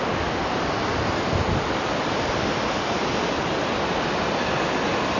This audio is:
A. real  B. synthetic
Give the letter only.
A